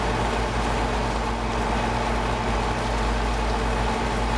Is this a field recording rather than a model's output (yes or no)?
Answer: yes